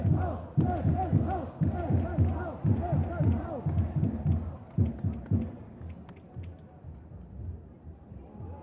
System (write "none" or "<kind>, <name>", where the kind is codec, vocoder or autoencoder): none